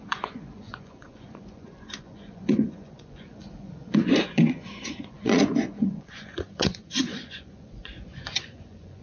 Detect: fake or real fake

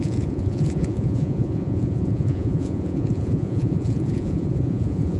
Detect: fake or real fake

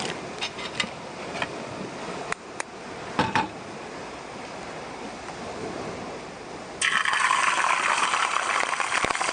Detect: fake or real real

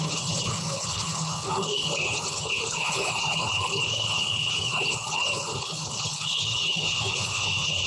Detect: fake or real fake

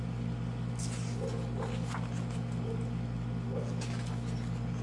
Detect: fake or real real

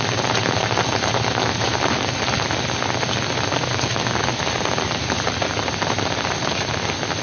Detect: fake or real real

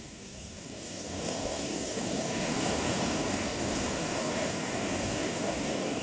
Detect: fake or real fake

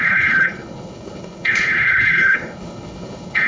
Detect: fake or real fake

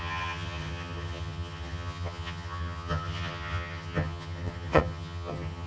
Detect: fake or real fake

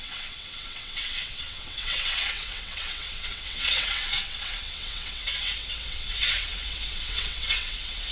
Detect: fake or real fake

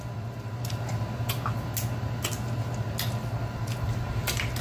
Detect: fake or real real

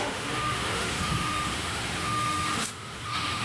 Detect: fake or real fake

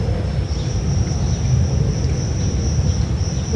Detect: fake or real real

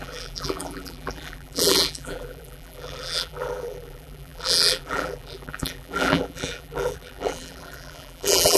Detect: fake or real fake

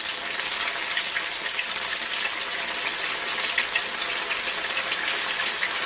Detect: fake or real real